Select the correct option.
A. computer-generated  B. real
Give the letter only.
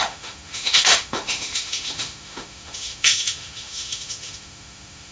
A